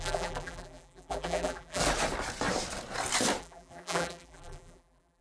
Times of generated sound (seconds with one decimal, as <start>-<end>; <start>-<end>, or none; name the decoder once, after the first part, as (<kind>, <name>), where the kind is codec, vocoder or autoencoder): 0.0-1.8 (vocoder, BigVGAN v2); 3.4-5.2